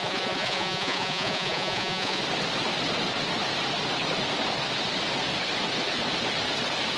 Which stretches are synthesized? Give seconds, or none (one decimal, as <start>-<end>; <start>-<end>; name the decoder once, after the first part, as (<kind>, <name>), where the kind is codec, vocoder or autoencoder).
0.0-2.2 (vocoder, Vocos)